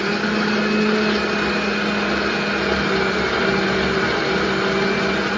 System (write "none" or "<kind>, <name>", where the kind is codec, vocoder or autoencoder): none